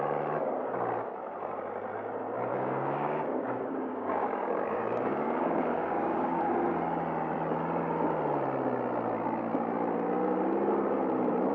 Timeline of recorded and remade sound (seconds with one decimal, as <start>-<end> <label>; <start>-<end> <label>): 0.0-2.5 recorded; 2.5-6.4 remade; 6.4-11.5 recorded